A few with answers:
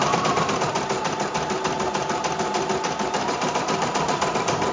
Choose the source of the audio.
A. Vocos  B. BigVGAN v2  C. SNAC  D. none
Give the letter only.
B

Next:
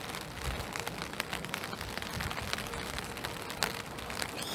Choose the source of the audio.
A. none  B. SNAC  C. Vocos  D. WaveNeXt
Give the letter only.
A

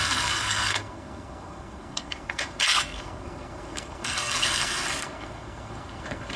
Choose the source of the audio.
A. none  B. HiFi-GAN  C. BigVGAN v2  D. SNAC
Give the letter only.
D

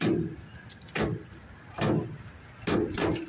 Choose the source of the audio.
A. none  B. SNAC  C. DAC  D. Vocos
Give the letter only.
A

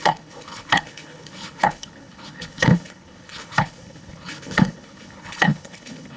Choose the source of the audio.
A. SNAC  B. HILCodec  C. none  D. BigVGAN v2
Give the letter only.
B